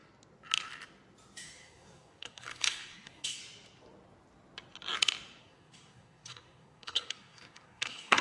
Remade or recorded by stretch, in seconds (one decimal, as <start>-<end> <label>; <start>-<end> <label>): 0.0-1.4 recorded; 1.4-3.4 remade; 3.4-5.4 recorded; 5.4-8.2 remade